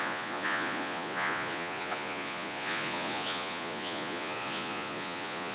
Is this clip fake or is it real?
fake